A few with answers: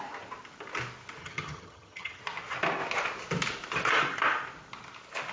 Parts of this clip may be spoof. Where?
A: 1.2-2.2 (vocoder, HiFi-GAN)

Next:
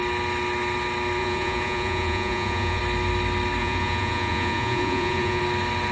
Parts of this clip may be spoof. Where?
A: 1.2-2.8 (vocoder, Vocos); 3.6-5.4

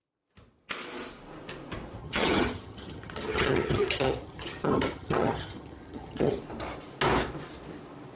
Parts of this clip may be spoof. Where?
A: 2.0-6.4 (vocoder, HiFi-GAN)

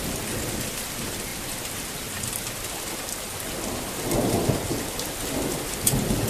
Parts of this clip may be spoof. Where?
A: none

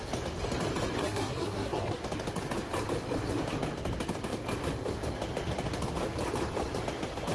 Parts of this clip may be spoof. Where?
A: 1.0-2.0 (codec, SNAC)

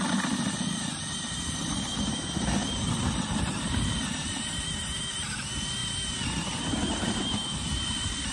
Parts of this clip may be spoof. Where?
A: none

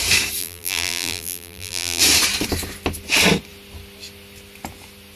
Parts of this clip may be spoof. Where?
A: 0.4-2.0 (vocoder, BigVGAN v2)